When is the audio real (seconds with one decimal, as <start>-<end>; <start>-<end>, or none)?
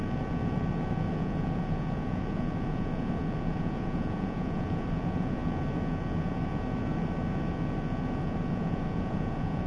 0.0-1.1; 5.4-8.2